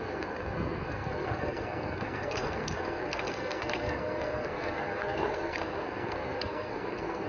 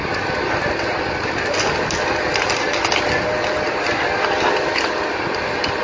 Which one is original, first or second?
second